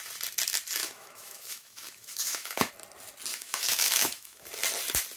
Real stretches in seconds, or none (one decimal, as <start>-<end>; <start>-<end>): 0.0-0.8; 2.7-3.3; 4.5-5.2